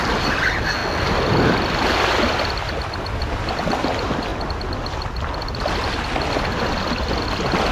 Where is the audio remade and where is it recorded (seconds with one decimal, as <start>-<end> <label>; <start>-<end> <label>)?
0.0-7.7 recorded